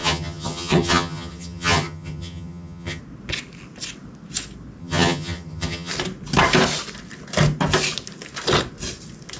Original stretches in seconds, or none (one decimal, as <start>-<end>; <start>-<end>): 3.0-4.8; 5.9-9.4